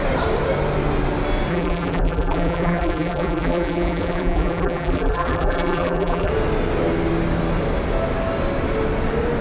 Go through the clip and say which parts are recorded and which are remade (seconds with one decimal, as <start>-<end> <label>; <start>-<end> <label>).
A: 0.0-1.5 recorded; 1.5-6.3 remade; 6.3-9.4 recorded